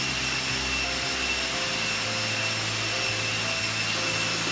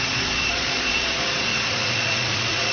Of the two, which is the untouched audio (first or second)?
first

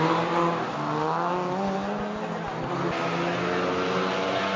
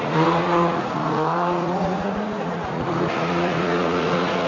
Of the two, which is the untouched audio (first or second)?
first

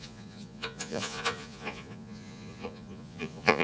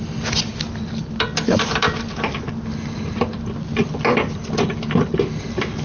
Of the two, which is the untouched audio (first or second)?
second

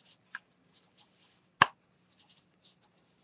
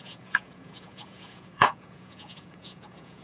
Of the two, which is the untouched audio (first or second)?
first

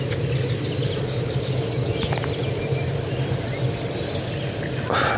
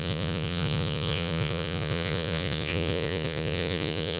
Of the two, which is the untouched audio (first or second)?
first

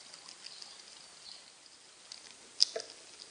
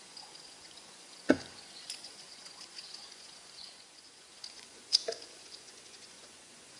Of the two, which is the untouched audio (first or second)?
first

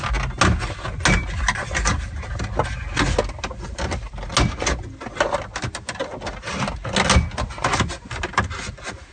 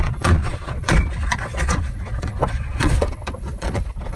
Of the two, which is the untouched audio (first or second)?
first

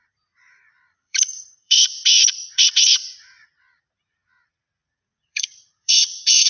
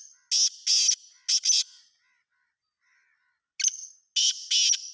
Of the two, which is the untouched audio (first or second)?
second